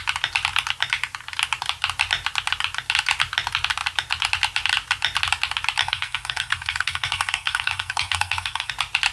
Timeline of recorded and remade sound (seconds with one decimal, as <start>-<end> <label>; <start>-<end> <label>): 0.0-5.8 recorded; 5.8-8.7 remade; 8.7-9.1 recorded